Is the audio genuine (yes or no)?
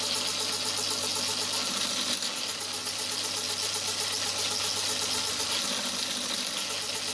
yes